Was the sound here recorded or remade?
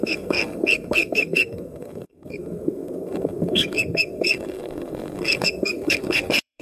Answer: remade